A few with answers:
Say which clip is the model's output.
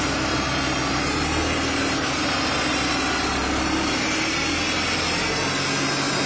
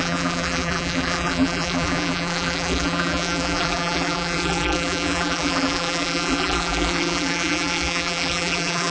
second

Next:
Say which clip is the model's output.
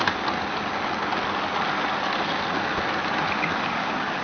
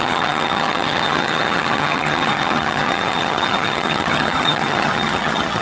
second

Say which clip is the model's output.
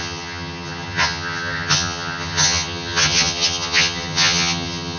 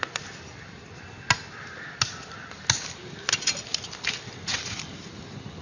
first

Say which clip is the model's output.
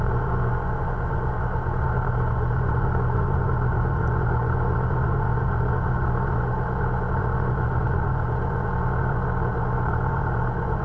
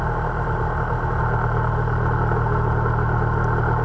first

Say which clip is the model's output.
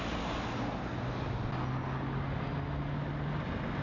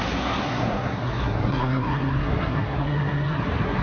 second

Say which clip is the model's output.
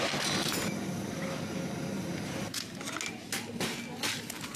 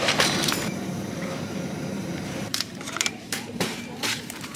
second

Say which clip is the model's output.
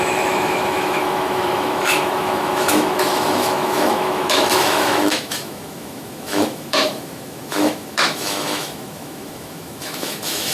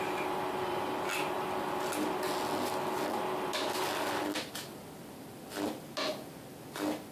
first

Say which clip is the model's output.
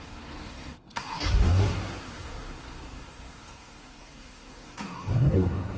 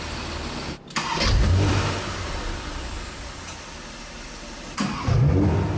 first